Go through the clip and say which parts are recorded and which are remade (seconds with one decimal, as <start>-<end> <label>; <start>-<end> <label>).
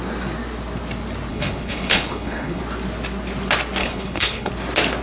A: 0.0-1.3 recorded; 1.3-2.6 remade; 2.6-3.8 recorded; 3.8-4.5 remade; 4.5-5.0 recorded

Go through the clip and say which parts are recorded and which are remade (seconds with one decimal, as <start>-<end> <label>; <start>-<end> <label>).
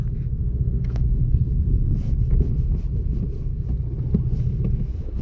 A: 0.0-0.4 recorded; 0.4-1.5 remade; 1.5-5.2 recorded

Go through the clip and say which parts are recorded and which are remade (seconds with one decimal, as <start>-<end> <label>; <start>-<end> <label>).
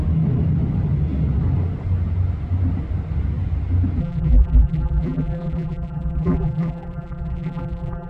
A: 0.0-4.0 recorded; 4.0-8.1 remade